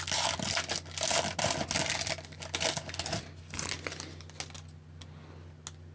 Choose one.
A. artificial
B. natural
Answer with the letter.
B